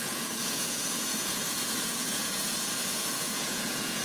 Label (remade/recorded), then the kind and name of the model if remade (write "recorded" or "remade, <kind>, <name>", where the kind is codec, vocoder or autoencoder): remade, vocoder, Vocos